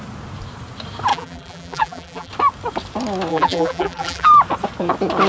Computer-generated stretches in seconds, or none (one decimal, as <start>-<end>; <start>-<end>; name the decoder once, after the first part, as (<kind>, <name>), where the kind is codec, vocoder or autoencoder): 1.1-2.3 (vocoder, BigVGAN v2); 3.3-4.3